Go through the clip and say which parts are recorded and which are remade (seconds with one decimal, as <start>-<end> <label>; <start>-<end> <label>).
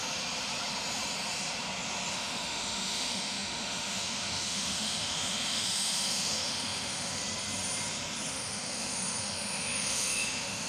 0.0-2.1 recorded; 2.1-7.2 remade; 7.2-8.3 recorded; 8.3-10.7 remade